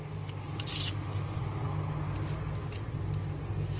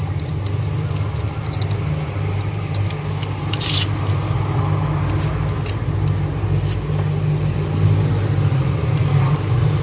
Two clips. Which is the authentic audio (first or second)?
first